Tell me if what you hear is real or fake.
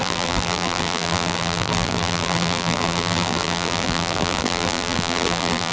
fake